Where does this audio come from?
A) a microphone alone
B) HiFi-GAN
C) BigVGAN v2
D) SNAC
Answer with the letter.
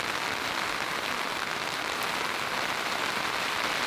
C